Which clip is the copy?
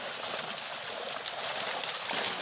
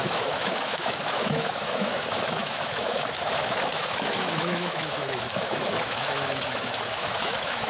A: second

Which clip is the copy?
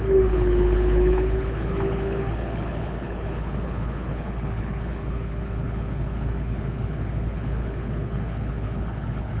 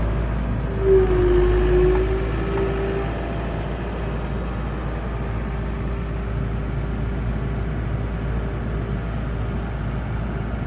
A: first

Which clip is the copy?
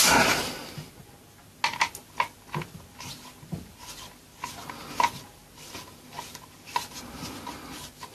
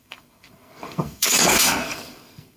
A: second